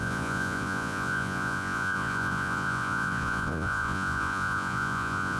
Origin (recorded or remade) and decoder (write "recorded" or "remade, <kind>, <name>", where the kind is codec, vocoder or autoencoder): remade, vocoder, Vocos